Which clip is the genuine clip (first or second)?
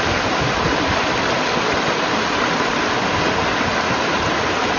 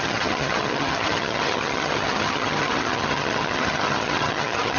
first